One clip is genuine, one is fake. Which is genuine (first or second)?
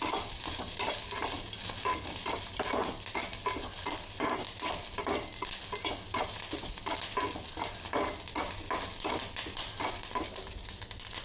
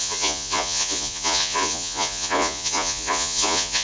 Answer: first